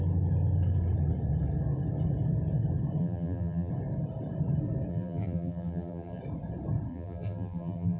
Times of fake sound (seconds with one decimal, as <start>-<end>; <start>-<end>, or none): 3.0-3.7; 4.9-6.2; 6.9-8.0